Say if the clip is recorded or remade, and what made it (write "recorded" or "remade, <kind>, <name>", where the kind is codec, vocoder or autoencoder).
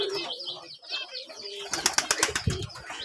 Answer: recorded